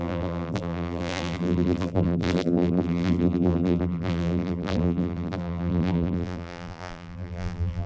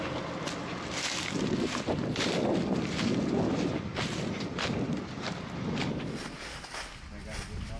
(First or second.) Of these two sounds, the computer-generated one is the first